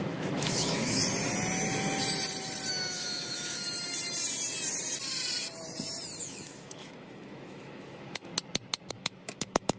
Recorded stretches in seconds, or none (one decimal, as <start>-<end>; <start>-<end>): 1.0-2.7; 3.6-6.2; 8.3-8.9